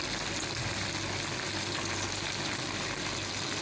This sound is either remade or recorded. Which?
recorded